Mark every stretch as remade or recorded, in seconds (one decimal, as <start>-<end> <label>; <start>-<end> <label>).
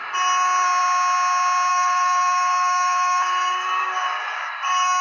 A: 0.0-1.7 recorded; 1.7-5.0 remade